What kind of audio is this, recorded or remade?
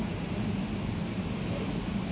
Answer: recorded